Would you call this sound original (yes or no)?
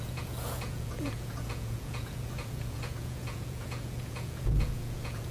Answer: no